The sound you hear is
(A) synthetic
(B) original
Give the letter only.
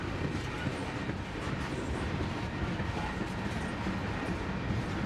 B